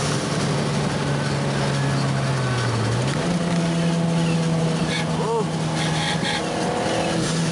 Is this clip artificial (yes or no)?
no